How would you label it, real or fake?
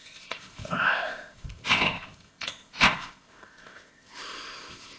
fake